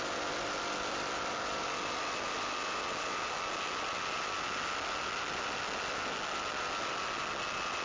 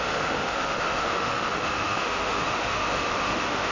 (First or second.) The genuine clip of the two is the first